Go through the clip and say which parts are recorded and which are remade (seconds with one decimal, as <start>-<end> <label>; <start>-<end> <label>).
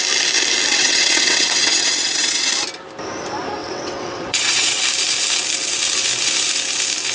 0.0-0.7 recorded; 0.7-2.5 remade; 2.5-3.6 recorded; 3.6-4.8 remade; 4.8-7.1 recorded